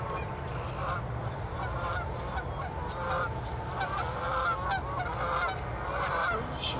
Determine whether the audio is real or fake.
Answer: real